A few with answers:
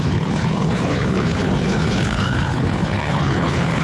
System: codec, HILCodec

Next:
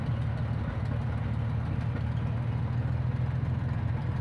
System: none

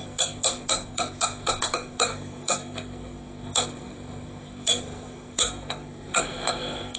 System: codec, SNAC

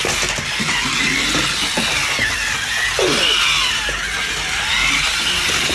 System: none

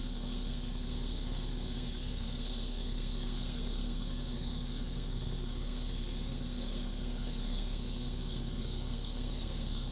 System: codec, SNAC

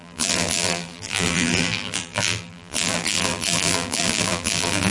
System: vocoder, BigVGAN v2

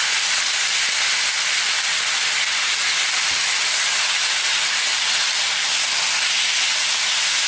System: none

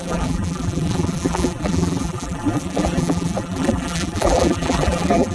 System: vocoder, BigVGAN v2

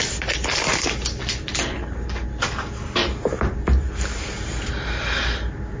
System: none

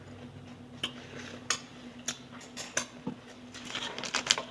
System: none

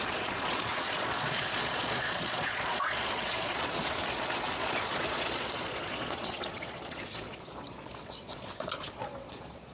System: vocoder, Vocos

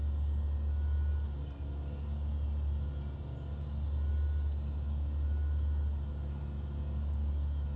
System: none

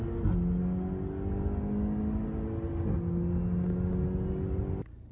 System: none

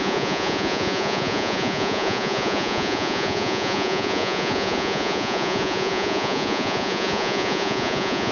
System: vocoder, Vocos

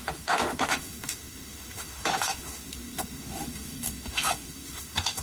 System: autoencoder, DAC-VAE